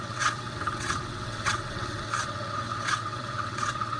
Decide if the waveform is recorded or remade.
remade